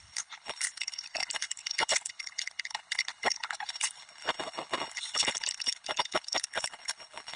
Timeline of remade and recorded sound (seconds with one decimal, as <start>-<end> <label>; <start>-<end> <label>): 0.0-7.4 remade